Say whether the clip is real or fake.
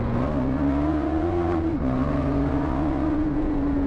fake